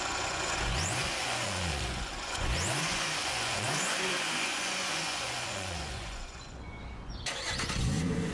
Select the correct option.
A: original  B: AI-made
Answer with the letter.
B